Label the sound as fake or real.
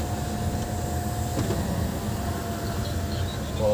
real